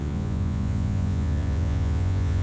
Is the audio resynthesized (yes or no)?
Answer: yes